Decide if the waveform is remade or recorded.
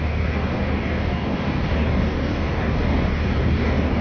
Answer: remade